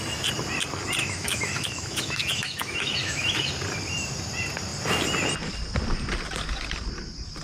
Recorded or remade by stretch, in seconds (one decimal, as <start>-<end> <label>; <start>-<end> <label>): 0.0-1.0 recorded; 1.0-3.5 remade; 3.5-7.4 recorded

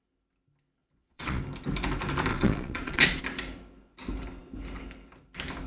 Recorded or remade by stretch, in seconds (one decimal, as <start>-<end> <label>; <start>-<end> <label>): 0.0-0.8 recorded; 0.8-1.4 remade; 1.4-2.3 recorded; 2.3-3.2 remade; 3.2-5.7 recorded

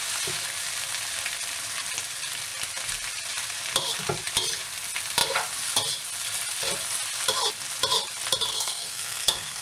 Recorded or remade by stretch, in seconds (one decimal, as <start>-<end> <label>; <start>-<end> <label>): 0.0-8.5 recorded; 8.5-9.6 remade

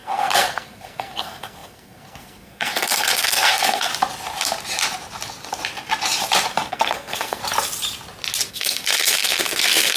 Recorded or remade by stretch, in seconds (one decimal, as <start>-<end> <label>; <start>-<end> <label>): 0.0-3.9 remade; 3.9-6.7 recorded; 6.7-7.4 remade; 7.4-8.5 recorded; 8.5-10.0 remade

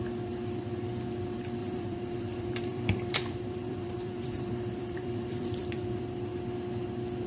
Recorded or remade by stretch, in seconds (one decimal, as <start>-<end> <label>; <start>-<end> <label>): 0.0-1.6 recorded; 1.6-6.0 remade; 6.0-7.3 recorded

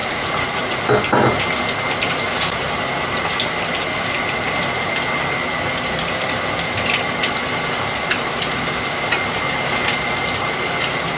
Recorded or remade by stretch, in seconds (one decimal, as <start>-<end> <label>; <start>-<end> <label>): 0.0-0.8 remade; 0.8-11.2 recorded

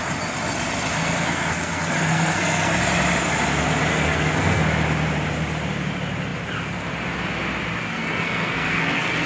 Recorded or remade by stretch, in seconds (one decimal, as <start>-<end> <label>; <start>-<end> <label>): 0.0-0.9 recorded; 0.9-2.8 remade; 2.8-3.9 recorded; 3.9-4.6 remade; 4.6-7.8 recorded; 7.8-9.3 remade